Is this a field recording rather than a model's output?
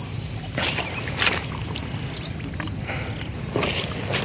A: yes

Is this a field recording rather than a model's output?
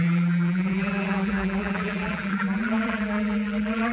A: no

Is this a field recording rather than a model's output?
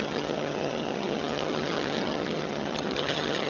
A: no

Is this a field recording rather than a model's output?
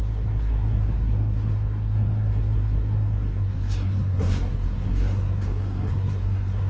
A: no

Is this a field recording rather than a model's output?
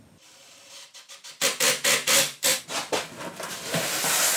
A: yes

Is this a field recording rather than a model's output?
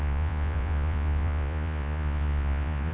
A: no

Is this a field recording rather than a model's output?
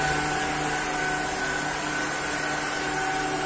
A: yes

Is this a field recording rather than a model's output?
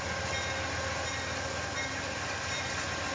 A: yes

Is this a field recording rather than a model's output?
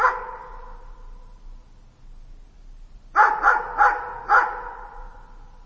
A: yes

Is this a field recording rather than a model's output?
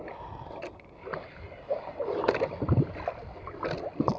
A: yes